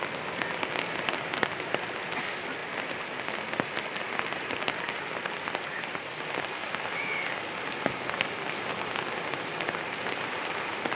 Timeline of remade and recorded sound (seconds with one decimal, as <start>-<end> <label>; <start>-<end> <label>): 0.0-11.0 recorded